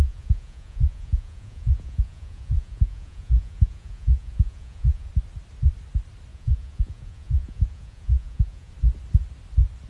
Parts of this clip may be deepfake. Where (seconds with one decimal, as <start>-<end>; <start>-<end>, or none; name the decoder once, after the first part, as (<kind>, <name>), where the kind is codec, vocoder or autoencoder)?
0.0-5.1 (vocoder, Vocos); 6.3-8.7